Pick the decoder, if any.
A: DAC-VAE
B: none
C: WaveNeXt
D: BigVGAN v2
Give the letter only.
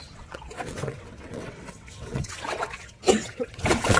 C